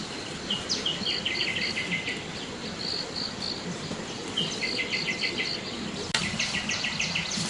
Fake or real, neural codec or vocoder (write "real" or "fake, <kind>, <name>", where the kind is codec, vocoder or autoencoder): real